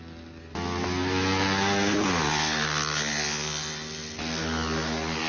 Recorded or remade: recorded